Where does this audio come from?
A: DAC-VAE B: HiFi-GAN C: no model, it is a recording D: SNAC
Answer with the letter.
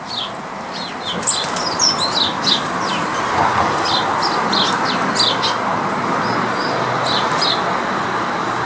C